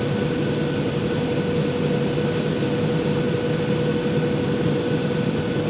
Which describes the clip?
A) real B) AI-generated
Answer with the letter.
A